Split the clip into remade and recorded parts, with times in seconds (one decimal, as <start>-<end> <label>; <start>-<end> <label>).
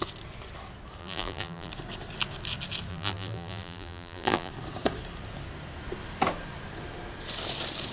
0.0-1.0 recorded; 1.0-1.7 remade; 1.7-2.9 recorded; 2.9-4.5 remade; 4.5-7.9 recorded